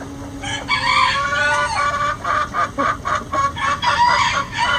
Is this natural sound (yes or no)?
yes